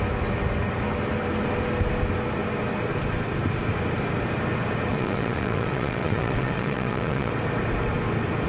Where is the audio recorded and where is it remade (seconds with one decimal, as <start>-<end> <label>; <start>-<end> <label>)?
0.0-4.9 recorded; 4.9-7.3 remade; 7.3-8.5 recorded